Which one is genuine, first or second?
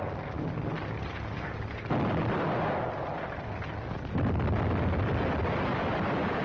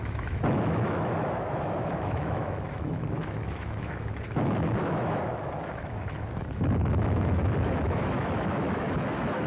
first